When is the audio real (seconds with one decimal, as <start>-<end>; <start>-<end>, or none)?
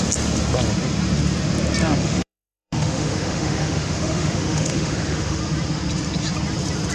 0.0-2.0; 5.4-6.9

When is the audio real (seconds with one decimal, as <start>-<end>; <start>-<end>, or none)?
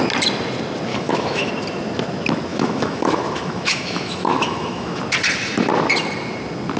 0.0-0.9; 1.5-2.5; 5.0-6.8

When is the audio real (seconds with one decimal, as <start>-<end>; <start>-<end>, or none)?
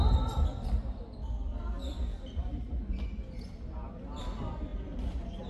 0.0-5.5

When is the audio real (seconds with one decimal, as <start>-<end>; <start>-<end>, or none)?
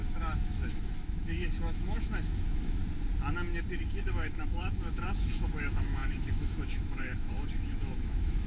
2.8-3.8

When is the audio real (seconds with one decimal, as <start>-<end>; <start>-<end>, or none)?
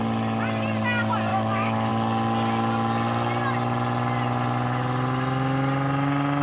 0.0-1.3; 1.9-6.4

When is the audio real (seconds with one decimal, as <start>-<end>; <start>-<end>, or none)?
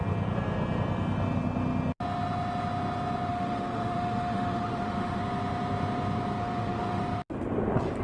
0.0-3.3; 5.2-6.4; 7.0-8.0